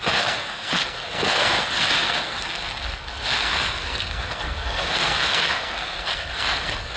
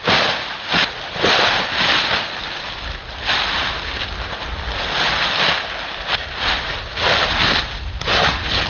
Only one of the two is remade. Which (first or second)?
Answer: first